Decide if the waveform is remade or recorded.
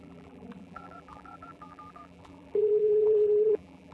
remade